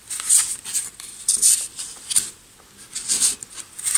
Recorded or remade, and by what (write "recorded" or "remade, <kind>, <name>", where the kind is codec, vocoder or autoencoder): remade, vocoder, BigVGAN v2